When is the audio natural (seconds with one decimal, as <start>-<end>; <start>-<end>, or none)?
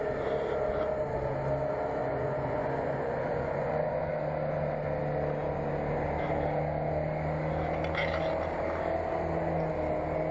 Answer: 0.0-2.0; 4.1-10.3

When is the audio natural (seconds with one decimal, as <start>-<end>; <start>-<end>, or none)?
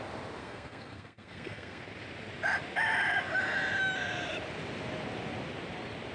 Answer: 0.0-0.4; 1.8-6.1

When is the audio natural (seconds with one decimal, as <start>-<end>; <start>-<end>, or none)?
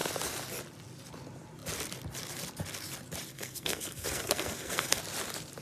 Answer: 0.0-3.3; 5.0-5.6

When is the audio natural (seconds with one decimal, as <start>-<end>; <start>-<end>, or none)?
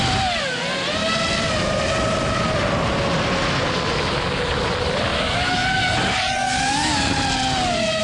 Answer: 0.0-8.0